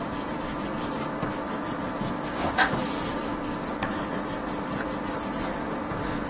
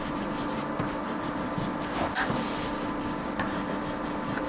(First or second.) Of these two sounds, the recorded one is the second